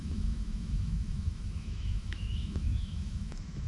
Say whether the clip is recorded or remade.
remade